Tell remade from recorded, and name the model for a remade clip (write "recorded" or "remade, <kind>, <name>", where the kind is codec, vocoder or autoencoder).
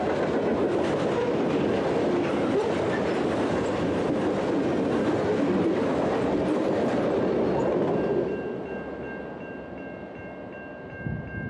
recorded